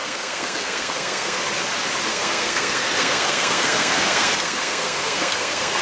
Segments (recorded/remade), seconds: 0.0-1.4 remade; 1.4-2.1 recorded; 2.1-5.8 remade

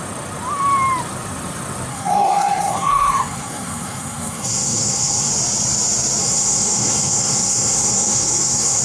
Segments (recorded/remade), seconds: 0.0-1.9 recorded; 1.9-5.3 remade; 5.3-6.2 recorded; 6.2-8.8 remade

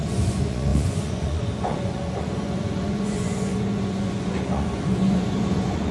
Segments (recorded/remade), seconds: 0.0-5.9 remade